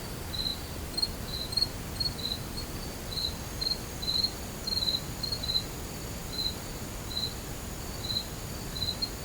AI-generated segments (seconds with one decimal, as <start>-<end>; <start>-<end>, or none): 0.5-2.6